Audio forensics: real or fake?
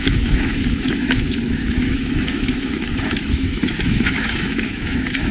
fake